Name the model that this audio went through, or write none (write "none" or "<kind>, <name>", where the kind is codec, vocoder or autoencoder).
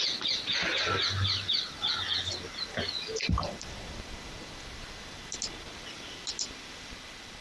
none